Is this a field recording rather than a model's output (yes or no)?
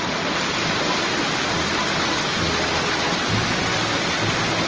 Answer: yes